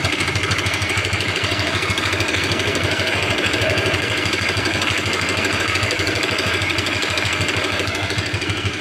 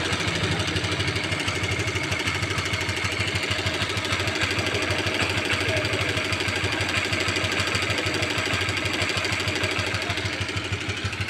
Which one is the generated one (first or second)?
first